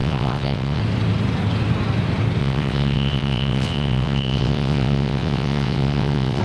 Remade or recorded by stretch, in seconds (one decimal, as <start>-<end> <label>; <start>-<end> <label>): 0.0-0.8 remade; 0.8-2.4 recorded; 2.4-6.4 remade